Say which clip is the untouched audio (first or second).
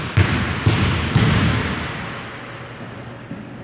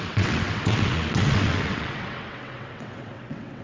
first